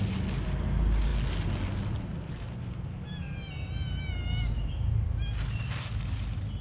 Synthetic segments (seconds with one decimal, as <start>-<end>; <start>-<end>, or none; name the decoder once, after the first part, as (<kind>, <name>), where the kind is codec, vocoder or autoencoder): none